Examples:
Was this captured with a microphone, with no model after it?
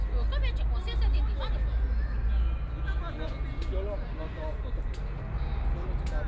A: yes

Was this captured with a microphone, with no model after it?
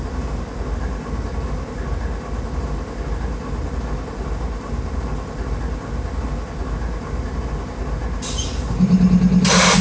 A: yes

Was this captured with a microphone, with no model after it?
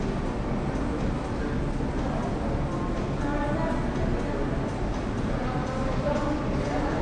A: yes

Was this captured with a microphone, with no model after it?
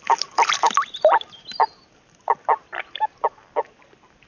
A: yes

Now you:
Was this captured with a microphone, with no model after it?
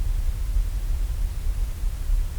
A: yes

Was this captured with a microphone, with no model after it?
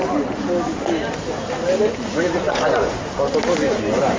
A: yes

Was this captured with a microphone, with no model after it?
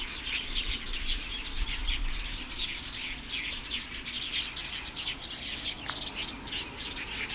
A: yes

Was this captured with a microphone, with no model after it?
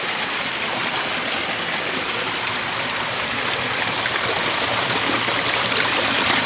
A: yes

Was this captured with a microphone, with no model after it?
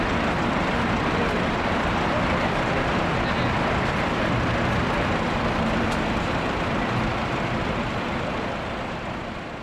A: no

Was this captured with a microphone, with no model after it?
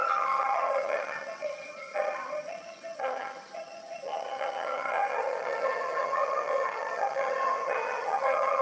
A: no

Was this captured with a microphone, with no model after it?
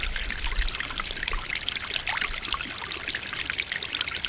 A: yes